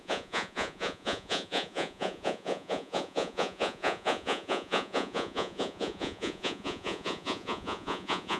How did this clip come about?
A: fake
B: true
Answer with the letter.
A